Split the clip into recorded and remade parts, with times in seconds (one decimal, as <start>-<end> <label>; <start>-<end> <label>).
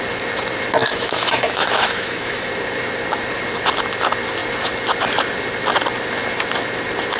0.0-0.8 recorded; 0.8-2.5 remade; 2.5-7.2 recorded